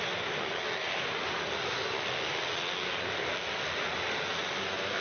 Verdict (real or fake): real